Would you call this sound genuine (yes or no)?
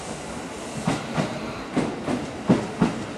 yes